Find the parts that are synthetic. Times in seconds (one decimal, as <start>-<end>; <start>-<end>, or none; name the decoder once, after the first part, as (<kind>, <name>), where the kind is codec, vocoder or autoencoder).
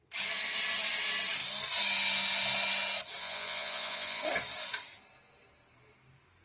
3.2-4.2 (vocoder, Vocos)